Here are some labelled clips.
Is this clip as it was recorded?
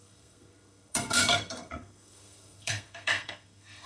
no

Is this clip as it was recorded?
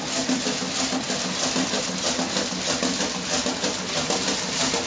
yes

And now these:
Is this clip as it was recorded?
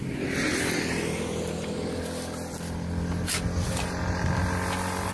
yes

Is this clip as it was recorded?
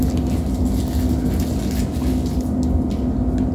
yes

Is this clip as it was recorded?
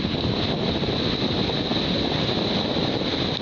yes